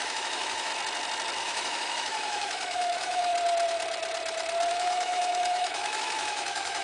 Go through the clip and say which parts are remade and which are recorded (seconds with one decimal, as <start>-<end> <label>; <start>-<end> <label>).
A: 0.0-0.7 remade; 0.7-1.4 recorded; 1.4-3.3 remade; 3.3-4.7 recorded; 4.7-6.8 remade